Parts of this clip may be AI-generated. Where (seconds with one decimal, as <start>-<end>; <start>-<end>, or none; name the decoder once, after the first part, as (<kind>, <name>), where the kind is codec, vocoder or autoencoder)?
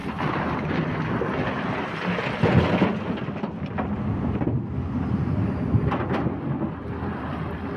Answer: none